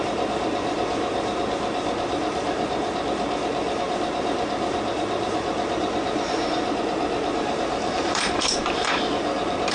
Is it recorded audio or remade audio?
remade